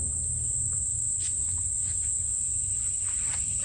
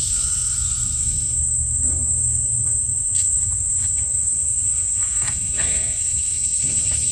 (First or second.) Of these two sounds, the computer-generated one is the second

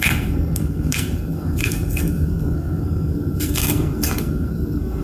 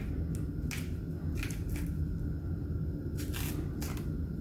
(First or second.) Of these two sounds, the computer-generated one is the first